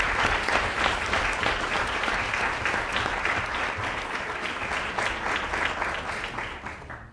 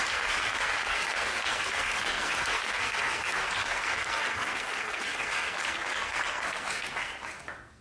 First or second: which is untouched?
first